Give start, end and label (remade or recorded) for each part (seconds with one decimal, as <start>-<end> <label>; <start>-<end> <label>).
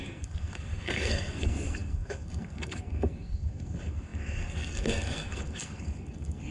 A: 0.0-6.5 remade